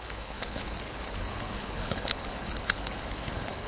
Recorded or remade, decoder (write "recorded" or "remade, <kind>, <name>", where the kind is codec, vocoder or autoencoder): remade, codec, HILCodec